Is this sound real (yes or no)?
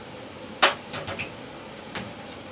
yes